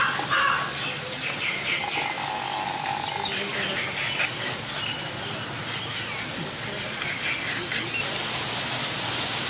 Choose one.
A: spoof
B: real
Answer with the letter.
B